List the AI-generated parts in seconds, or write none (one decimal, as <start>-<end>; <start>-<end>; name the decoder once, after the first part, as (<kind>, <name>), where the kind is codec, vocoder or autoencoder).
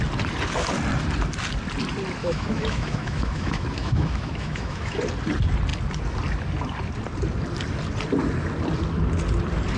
2.2-5.0 (autoencoder, DAC-VAE)